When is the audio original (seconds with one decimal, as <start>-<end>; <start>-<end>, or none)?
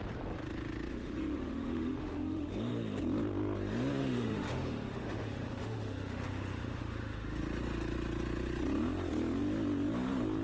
0.0-0.9; 2.5-4.0; 7.4-10.4